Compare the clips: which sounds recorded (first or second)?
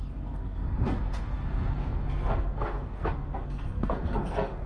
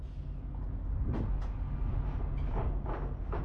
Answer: second